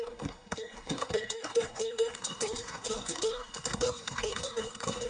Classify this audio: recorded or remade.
remade